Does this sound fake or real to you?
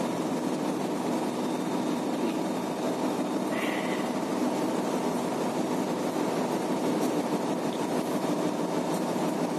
real